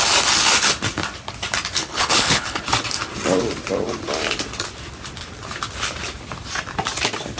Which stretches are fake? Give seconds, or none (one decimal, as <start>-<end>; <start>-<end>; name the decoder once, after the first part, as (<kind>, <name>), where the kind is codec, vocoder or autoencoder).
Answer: 1.8-2.6 (codec, HILCodec)